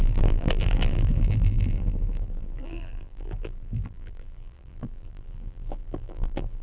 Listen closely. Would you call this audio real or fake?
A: fake